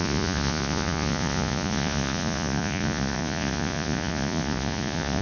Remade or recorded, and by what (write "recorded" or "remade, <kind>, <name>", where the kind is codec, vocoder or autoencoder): remade, vocoder, Vocos